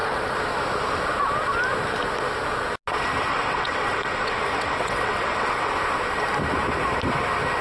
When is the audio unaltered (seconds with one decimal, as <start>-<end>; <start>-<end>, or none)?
0.0-3.3; 5.7-7.6